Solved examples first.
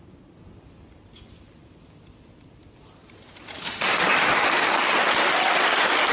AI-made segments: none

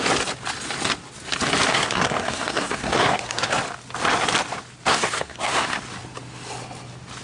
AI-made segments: 1.7-3.6 (codec, SNAC); 4.9-5.8